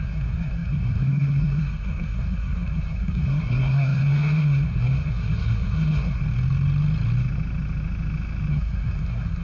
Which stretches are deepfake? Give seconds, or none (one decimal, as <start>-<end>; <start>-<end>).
0.0-6.2; 8.5-9.4